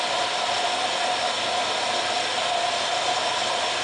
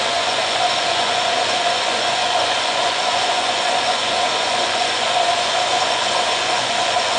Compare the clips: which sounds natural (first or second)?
first